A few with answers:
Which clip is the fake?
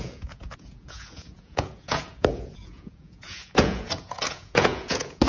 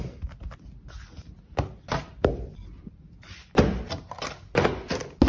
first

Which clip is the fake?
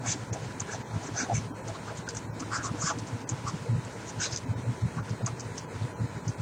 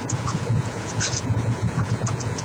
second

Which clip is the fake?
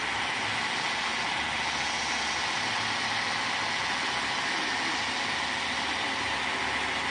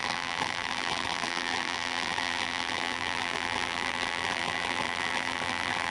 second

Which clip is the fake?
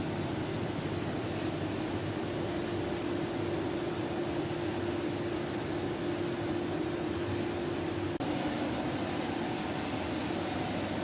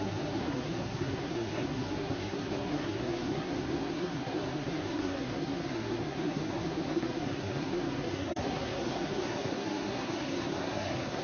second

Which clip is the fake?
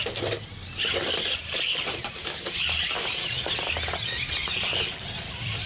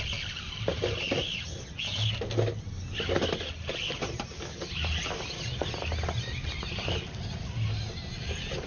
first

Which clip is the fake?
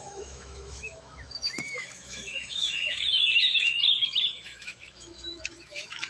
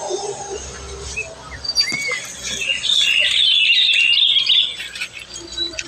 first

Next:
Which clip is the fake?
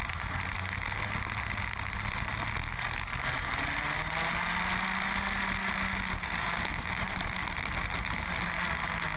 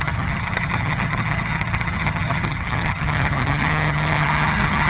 second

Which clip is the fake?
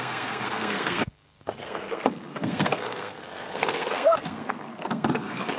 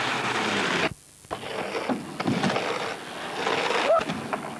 first